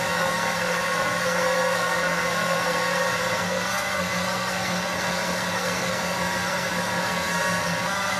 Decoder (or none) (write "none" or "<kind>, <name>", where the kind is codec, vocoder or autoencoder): codec, SNAC